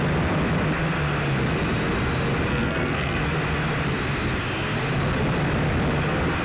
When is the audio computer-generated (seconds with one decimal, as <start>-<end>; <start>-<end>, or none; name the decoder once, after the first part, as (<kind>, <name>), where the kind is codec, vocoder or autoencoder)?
2.5-3.2 (codec, SNAC)